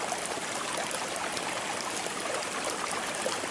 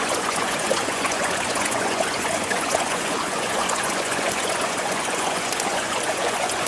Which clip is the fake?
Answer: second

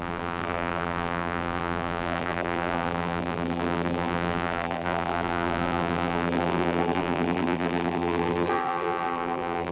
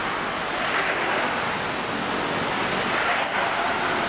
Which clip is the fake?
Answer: first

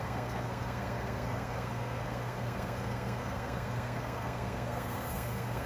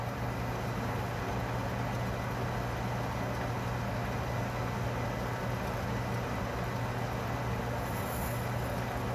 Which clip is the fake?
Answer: first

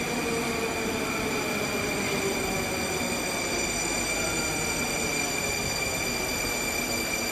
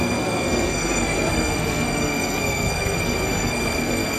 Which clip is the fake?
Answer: second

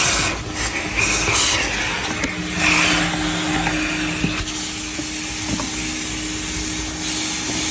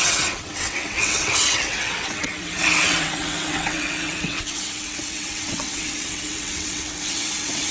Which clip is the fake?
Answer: second